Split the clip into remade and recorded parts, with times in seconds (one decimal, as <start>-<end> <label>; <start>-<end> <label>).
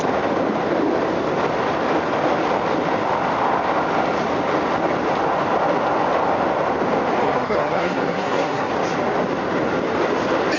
0.0-7.2 recorded; 7.2-8.7 remade; 8.7-10.6 recorded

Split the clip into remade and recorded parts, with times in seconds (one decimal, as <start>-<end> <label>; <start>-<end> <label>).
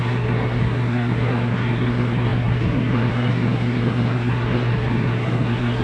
0.0-5.8 remade